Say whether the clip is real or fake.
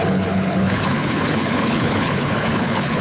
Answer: fake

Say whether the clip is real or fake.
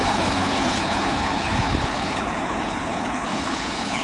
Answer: fake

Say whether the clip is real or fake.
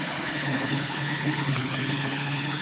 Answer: fake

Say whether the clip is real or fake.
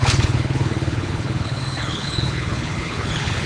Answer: fake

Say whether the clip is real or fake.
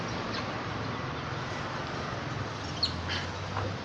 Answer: real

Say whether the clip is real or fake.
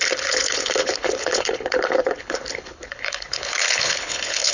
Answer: fake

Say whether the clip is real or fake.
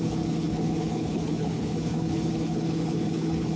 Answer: fake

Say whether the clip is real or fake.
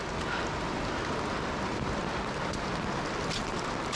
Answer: real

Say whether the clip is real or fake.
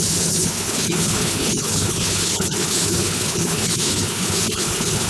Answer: fake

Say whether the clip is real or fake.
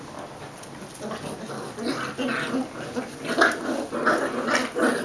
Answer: real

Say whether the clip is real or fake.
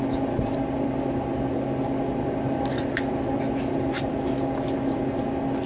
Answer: real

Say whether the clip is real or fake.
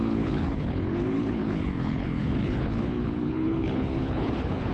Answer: fake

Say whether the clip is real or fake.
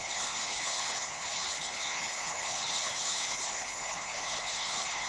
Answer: fake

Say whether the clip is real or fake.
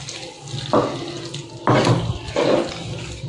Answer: real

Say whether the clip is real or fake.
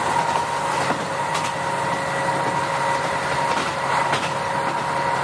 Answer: real